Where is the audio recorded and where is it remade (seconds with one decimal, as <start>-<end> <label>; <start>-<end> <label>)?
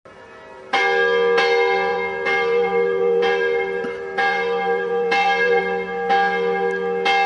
0.0-1.9 recorded; 1.9-5.6 remade; 5.6-7.3 recorded